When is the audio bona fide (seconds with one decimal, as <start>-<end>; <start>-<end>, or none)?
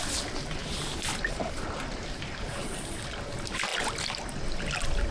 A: 0.0-5.1